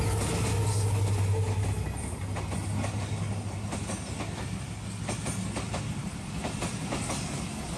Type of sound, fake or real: real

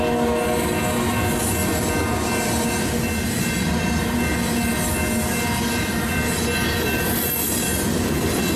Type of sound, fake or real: real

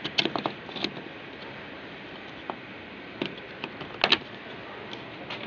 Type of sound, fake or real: real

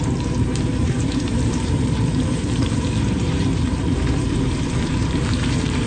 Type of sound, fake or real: fake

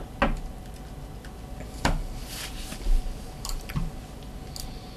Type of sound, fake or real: real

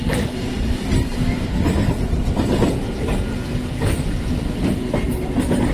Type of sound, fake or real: fake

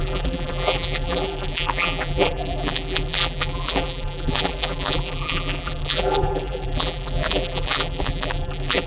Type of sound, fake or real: fake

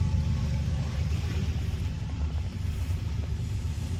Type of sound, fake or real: fake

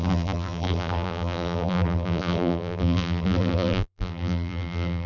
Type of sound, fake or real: fake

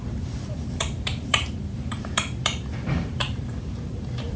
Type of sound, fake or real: fake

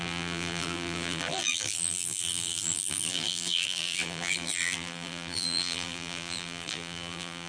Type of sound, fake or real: fake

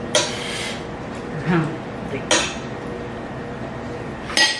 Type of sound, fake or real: real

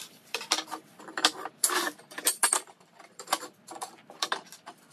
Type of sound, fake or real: fake